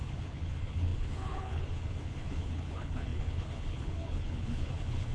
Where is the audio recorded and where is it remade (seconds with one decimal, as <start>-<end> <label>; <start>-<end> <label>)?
0.0-5.1 remade

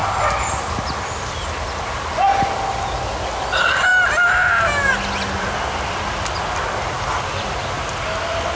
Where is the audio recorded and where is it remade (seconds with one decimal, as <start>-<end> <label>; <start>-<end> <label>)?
0.0-8.5 recorded